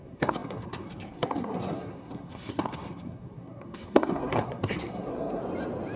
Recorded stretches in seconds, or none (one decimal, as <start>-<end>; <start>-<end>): 5.4-6.0